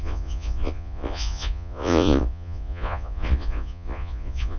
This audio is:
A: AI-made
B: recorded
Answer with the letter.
A